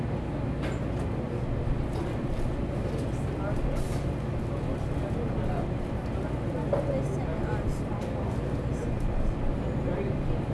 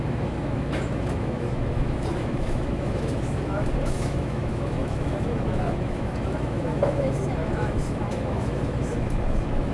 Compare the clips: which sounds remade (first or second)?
second